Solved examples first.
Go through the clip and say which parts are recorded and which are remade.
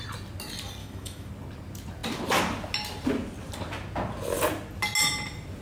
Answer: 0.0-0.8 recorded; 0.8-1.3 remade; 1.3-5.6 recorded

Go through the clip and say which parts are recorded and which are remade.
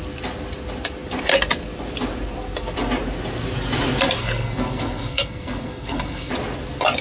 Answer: 0.0-4.2 recorded; 4.2-6.3 remade; 6.3-7.0 recorded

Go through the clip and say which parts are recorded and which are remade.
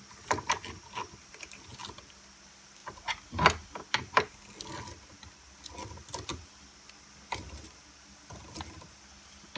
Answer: 0.0-9.6 recorded